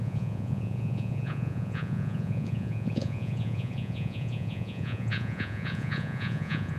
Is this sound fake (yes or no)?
yes